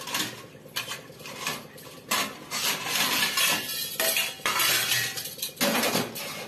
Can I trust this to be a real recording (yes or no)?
yes